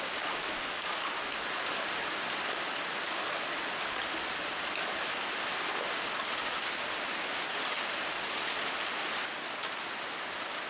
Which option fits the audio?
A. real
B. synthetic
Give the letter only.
A